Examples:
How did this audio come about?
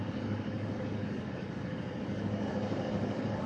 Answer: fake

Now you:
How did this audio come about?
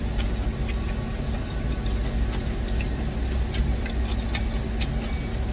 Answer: real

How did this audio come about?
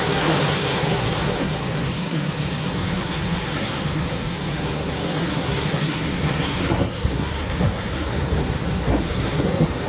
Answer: fake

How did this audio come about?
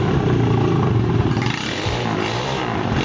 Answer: real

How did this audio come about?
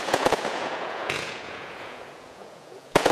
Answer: fake